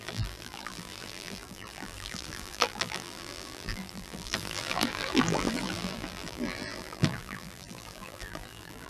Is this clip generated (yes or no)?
yes